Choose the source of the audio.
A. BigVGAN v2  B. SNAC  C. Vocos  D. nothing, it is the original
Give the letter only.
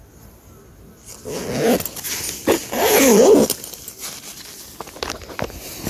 D